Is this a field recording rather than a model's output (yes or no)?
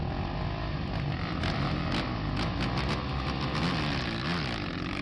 yes